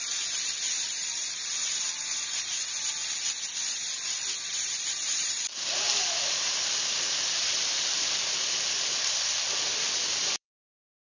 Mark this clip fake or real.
fake